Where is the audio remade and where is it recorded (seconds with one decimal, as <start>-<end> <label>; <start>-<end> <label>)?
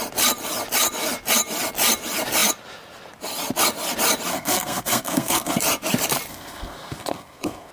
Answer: 0.0-4.3 recorded; 4.3-5.6 remade; 5.6-6.3 recorded; 6.3-7.7 remade